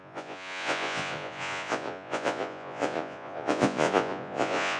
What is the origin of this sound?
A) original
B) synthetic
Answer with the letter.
B